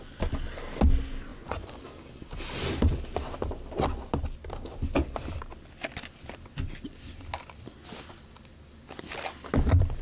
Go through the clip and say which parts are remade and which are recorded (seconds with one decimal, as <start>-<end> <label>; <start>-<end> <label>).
0.0-1.3 recorded; 1.3-1.8 remade; 1.8-10.0 recorded